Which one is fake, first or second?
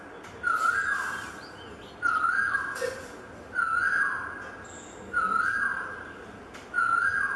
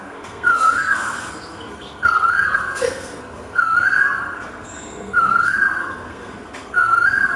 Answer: second